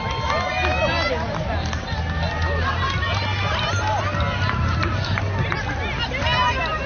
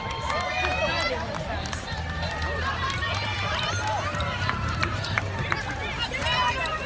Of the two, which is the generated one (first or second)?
second